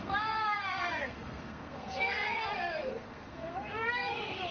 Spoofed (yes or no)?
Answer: yes